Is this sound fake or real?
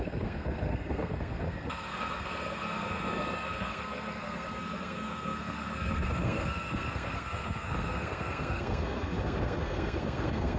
fake